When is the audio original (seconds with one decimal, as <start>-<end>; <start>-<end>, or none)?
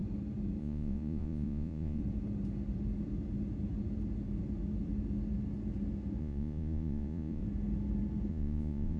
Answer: 0.0-0.6; 2.0-6.2; 7.4-8.3